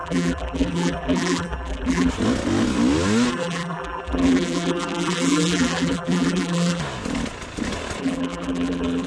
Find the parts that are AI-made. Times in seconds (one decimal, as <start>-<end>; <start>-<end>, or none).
0.0-2.1; 3.3-6.8; 8.0-9.1